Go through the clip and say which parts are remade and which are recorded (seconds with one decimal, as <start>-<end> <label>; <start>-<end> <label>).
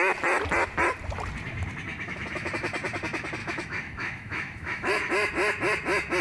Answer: 0.0-1.9 recorded; 1.9-2.5 remade; 2.5-3.4 recorded; 3.4-4.9 remade; 4.9-6.2 recorded